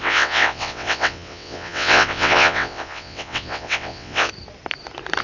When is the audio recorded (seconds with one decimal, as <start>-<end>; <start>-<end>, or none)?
4.3-5.2